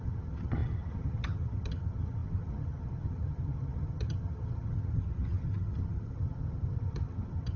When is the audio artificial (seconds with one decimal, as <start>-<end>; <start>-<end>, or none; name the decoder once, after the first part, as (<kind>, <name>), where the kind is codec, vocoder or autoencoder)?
0.0-7.6 (vocoder, HiFi-GAN)